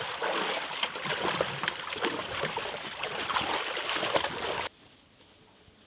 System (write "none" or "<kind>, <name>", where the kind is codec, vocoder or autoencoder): none